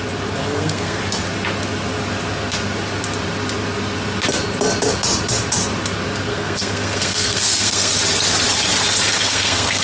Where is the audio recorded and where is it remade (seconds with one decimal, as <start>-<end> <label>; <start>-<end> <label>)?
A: 0.0-0.4 recorded; 0.4-1.0 remade; 1.0-6.3 recorded; 6.3-7.9 remade; 7.9-9.1 recorded; 9.1-9.8 remade